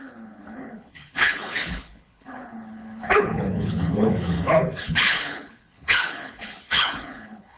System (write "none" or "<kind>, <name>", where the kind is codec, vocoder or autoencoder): codec, HILCodec